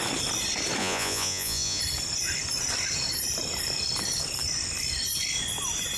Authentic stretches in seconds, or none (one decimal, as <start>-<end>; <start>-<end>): 0.0-0.8; 1.8-6.0